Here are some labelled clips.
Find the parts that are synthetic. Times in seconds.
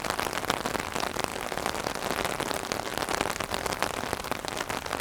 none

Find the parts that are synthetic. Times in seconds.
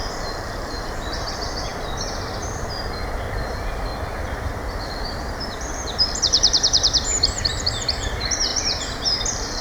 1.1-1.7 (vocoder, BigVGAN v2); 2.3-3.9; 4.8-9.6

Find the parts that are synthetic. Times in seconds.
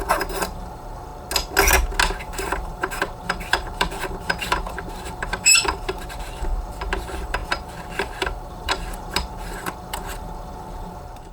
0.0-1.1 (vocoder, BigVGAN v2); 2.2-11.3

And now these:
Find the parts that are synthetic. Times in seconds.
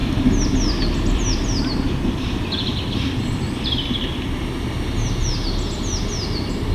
0.0-3.5 (vocoder, BigVGAN v2)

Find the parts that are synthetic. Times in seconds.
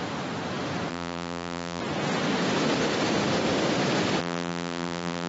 0.9-1.8 (vocoder, BigVGAN v2); 4.2-5.3